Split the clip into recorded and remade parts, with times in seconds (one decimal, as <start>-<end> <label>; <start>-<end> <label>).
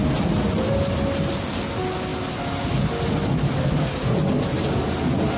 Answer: 0.0-5.4 recorded